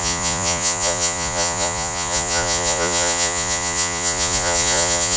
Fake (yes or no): yes